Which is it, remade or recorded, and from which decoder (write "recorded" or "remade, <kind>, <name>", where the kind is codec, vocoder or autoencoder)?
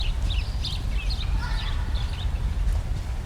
remade, vocoder, BigVGAN v2